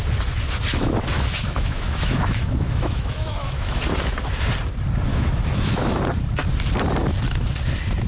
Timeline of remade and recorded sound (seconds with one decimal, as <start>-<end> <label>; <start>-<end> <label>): 0.0-0.7 recorded; 0.7-3.8 remade; 3.8-5.1 recorded; 5.1-6.0 remade; 6.0-8.1 recorded